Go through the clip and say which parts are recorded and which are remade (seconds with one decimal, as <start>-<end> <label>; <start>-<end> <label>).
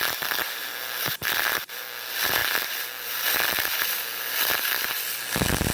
0.0-5.7 recorded